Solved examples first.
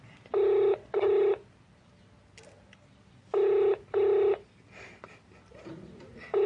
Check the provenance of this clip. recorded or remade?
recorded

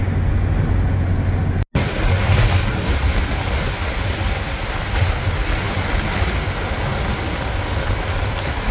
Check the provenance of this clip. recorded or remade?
recorded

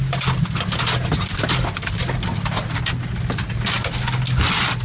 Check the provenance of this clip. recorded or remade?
recorded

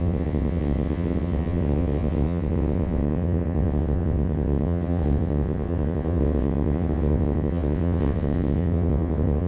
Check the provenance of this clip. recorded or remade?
remade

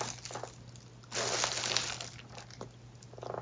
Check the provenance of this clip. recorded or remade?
recorded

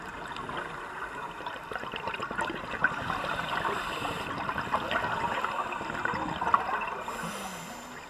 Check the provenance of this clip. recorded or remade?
recorded